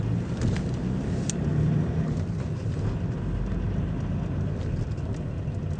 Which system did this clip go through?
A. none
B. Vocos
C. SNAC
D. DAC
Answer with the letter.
A